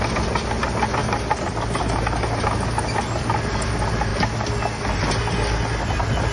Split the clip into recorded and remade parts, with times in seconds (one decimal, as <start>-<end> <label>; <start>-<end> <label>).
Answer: 0.0-6.3 recorded